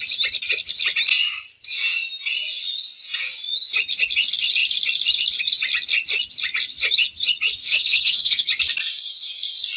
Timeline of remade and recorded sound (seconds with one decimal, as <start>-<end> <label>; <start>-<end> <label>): 0.0-7.6 recorded; 7.6-8.5 remade; 8.5-9.8 recorded